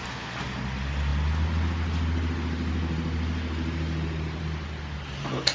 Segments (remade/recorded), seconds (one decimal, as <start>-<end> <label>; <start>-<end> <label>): 0.0-5.5 recorded